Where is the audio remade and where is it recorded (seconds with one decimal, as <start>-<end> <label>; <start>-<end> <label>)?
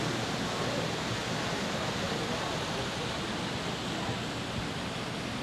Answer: 0.0-5.4 recorded